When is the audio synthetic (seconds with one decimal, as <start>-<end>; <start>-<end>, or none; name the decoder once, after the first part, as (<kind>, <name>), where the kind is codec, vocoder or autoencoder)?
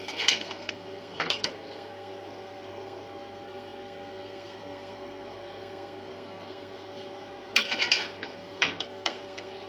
0.0-9.7 (codec, SNAC)